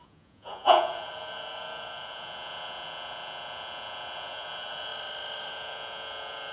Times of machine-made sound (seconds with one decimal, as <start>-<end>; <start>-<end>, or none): 0.0-4.9; 5.5-6.5